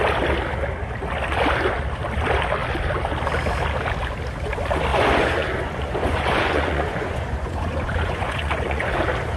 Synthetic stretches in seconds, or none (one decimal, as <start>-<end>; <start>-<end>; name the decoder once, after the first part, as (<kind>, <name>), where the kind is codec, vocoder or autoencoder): 4.9-9.0 (vocoder, Vocos)